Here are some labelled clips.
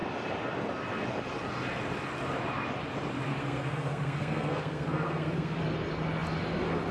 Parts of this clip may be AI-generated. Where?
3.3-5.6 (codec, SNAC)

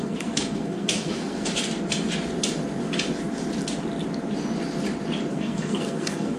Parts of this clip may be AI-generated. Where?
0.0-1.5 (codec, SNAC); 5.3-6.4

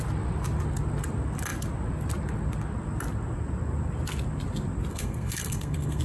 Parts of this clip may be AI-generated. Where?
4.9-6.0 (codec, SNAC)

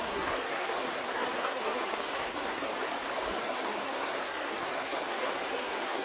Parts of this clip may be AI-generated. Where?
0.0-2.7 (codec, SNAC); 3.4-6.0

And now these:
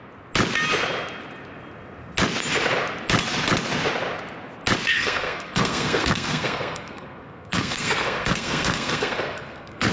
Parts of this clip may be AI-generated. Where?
4.9-9.9 (codec, SNAC)

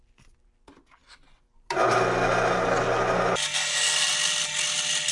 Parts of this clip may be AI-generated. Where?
none

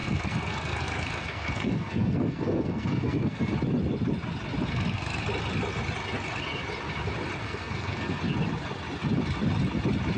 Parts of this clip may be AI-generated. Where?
0.0-3.5 (codec, SNAC); 4.7-5.2; 7.4-8.2